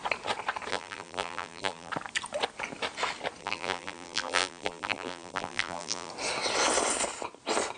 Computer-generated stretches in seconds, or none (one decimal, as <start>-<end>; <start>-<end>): 0.7-1.9; 3.4-6.1